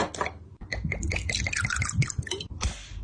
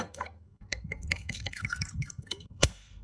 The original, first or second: first